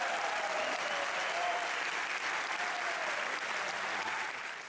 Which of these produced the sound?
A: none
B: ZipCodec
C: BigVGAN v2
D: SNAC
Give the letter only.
A